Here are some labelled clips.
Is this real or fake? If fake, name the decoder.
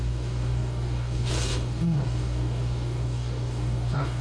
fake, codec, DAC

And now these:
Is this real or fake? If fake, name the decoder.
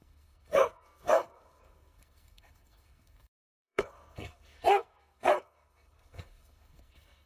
fake, codec, SNAC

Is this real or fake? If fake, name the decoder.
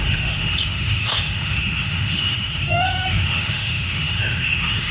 fake, autoencoder, DAC-VAE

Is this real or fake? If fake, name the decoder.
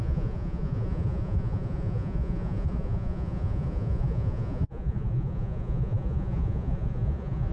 fake, vocoder, Vocos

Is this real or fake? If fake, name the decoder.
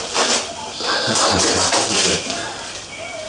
real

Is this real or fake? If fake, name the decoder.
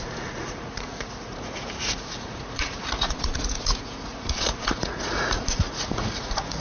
fake, vocoder, Vocos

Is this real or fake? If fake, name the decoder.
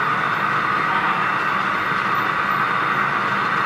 real